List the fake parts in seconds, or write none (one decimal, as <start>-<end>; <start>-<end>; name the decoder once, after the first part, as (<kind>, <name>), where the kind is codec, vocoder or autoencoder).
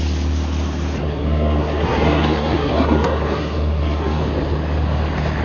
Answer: 1.0-4.2 (codec, SNAC)